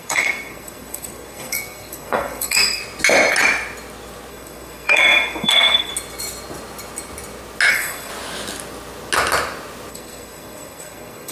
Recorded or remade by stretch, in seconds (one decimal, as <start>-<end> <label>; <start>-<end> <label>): 0.0-2.8 remade; 2.8-4.3 recorded; 4.3-5.9 remade; 5.9-7.7 recorded; 7.7-8.1 remade; 8.1-9.9 recorded; 9.9-11.3 remade